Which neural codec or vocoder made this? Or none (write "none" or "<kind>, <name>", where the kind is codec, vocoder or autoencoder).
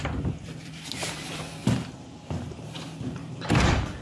vocoder, BigVGAN v2